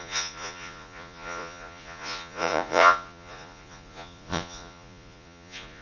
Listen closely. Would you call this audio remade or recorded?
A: remade